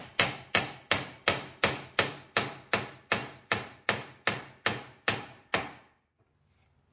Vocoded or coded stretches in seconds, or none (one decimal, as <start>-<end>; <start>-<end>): 3.2-3.8